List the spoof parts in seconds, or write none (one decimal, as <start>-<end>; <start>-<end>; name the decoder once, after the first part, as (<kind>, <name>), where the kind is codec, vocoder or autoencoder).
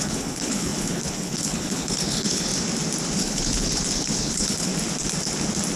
0.0-2.5 (codec, HILCodec); 3.2-4.7